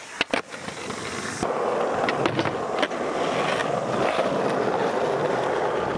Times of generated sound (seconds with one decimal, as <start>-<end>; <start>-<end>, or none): none